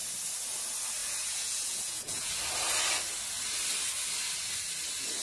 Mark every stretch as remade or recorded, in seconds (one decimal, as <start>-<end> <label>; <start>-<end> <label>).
0.0-1.0 recorded; 1.0-2.3 remade; 2.3-5.2 recorded